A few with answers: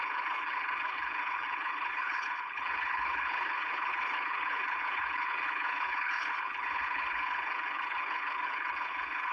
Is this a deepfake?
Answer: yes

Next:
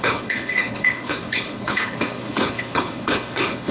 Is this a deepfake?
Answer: yes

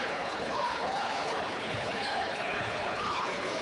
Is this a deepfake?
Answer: yes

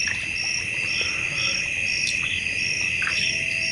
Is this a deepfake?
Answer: no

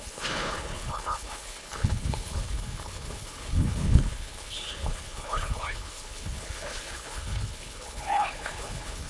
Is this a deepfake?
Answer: yes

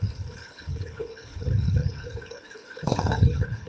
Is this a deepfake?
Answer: yes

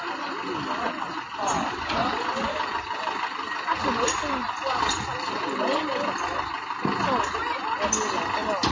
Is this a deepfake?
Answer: no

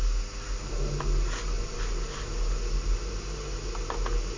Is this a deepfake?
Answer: no